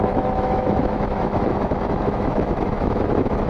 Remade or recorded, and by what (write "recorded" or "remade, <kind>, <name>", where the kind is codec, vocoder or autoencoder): remade, autoencoder, DAC-VAE